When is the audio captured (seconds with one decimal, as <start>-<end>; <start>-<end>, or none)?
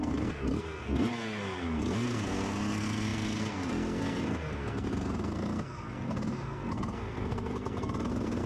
none